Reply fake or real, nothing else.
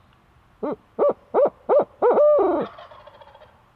real